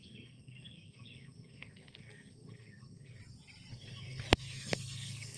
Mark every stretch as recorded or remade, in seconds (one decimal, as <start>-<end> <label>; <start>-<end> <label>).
0.0-3.2 remade; 3.2-3.7 recorded; 3.7-5.4 remade